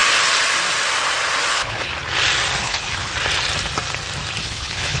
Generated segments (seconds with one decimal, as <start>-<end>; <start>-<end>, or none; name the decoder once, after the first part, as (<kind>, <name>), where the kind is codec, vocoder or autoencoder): 1.5-1.9 (codec, HILCodec); 2.6-3.1; 4.4-5.0